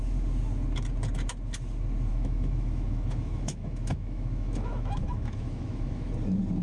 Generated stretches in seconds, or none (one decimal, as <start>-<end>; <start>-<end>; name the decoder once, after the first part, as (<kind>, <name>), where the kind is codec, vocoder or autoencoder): 2.1-6.1 (autoencoder, DAC-VAE)